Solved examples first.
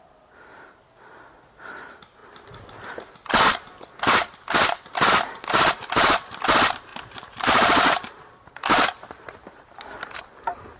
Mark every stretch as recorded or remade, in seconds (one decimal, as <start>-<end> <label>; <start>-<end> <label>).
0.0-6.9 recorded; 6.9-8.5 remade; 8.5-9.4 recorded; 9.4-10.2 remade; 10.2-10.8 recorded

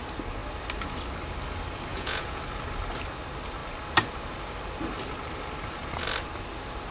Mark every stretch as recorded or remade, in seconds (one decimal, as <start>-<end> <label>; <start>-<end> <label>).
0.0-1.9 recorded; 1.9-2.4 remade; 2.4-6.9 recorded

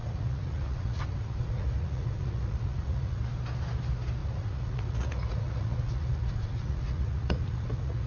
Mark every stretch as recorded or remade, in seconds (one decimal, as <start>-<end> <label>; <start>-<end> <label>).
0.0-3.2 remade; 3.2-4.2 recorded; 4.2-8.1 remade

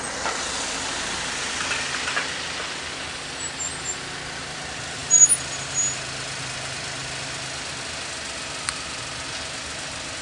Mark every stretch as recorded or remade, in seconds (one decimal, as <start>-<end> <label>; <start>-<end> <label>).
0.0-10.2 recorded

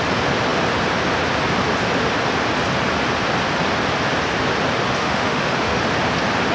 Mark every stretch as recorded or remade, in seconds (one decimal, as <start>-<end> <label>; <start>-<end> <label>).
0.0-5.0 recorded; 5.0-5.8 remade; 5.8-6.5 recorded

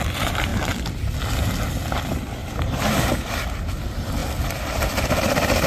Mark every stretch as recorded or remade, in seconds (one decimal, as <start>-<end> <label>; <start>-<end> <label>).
0.0-2.4 recorded; 2.4-3.1 remade; 3.1-5.7 recorded

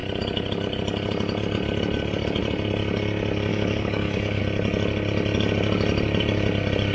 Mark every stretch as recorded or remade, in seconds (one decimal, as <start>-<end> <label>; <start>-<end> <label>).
0.0-3.5 recorded; 3.5-4.4 remade; 4.4-6.9 recorded